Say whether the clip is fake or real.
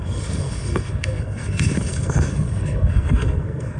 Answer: fake